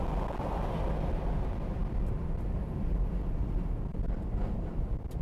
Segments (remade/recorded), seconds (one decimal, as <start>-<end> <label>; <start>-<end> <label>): 0.0-5.2 recorded